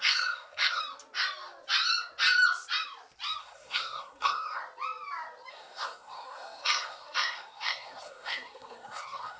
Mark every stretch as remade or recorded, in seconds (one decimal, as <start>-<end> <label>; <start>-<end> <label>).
0.0-0.8 remade; 0.8-3.4 recorded; 3.4-4.6 remade; 4.6-5.5 recorded; 5.5-9.4 remade